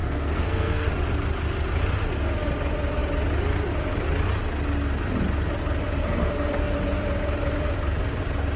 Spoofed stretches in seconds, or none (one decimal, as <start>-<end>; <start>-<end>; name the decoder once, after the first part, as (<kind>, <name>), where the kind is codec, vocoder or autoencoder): 0.0-0.9 (codec, SNAC); 6.0-6.7